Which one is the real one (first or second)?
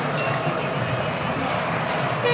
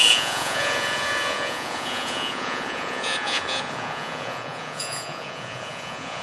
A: first